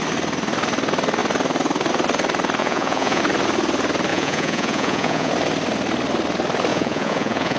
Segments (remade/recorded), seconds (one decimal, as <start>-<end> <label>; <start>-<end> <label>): 0.0-2.6 recorded; 2.6-3.2 remade; 3.2-4.1 recorded; 4.1-5.3 remade; 5.3-6.7 recorded; 6.7-7.6 remade